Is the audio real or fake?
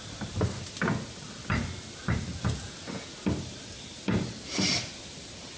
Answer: real